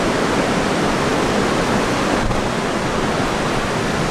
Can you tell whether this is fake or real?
fake